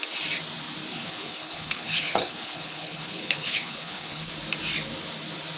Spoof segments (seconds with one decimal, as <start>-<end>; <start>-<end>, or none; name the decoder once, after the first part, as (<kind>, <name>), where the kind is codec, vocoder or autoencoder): 0.9-4.3 (codec, HILCodec)